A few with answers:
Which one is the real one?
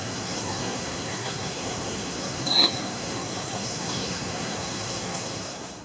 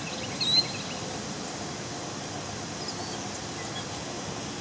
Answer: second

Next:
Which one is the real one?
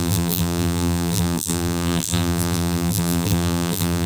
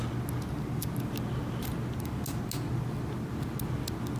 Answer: second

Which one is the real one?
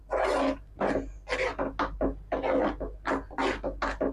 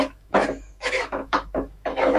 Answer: first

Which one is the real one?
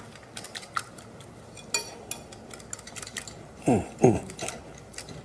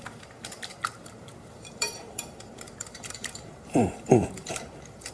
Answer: first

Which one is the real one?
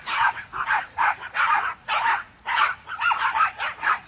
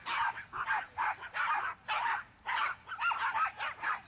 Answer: second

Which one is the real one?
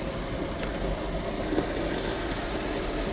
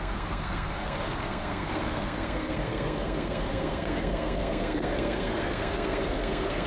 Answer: first